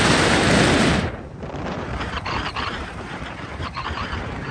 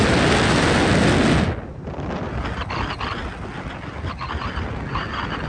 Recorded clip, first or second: second